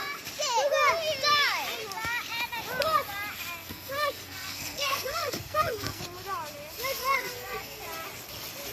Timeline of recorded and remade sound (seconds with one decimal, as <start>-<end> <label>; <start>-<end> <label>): 0.0-3.6 recorded; 3.6-6.0 remade; 6.0-7.0 recorded; 7.0-7.8 remade; 7.8-8.7 recorded